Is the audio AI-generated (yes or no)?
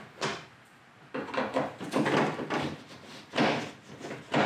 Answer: no